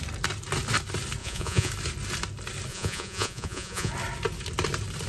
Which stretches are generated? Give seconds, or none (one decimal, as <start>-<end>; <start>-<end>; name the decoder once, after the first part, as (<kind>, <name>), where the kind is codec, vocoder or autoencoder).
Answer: 1.2-1.7 (vocoder, Vocos); 2.7-3.9